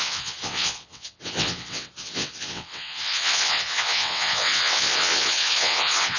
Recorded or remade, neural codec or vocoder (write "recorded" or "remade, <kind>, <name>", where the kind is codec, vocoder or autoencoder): remade, vocoder, WaveNeXt